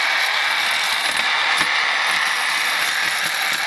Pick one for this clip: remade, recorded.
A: recorded